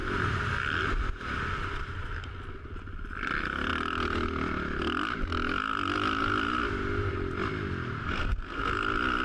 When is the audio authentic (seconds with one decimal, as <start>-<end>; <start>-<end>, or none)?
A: 0.0-8.0; 8.7-9.2